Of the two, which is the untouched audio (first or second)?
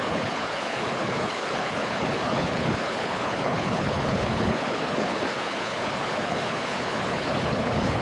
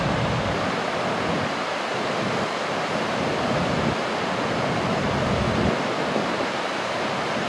second